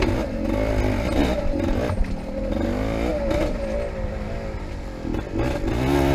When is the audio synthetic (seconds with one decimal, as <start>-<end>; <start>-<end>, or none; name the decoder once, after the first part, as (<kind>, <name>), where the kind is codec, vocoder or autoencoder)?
none